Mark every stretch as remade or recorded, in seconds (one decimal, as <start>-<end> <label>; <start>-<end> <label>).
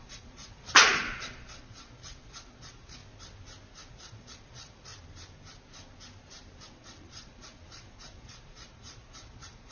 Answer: 0.0-3.0 remade; 3.0-3.9 recorded; 3.9-4.9 remade; 4.9-6.7 recorded; 6.7-9.7 remade